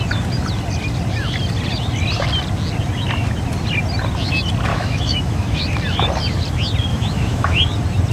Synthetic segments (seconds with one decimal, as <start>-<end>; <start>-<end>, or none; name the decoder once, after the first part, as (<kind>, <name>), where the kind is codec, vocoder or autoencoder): 4.7-5.6 (autoencoder, DAC-VAE); 6.9-7.6